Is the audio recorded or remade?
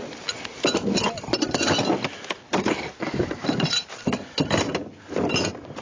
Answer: recorded